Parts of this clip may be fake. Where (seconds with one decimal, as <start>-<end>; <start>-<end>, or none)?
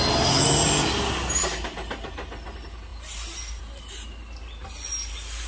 none